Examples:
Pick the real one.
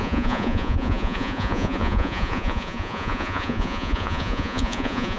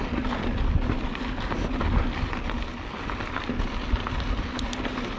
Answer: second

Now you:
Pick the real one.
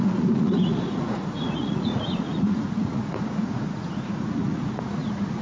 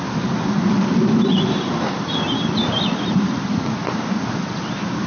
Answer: second